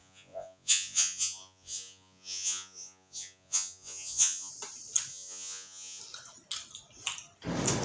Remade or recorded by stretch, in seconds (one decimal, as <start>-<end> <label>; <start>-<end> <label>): 0.0-4.5 remade; 4.5-5.1 recorded; 5.1-6.0 remade; 6.0-7.8 recorded